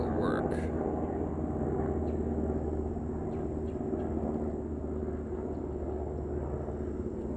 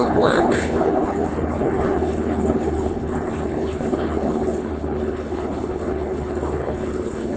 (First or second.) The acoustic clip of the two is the first